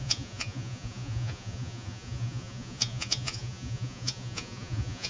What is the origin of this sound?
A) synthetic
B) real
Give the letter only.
A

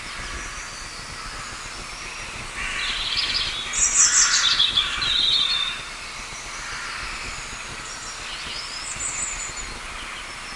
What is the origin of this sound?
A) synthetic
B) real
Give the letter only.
B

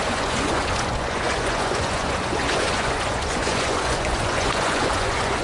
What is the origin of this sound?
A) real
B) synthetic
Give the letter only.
B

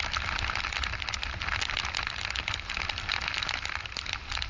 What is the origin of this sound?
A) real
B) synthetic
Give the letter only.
A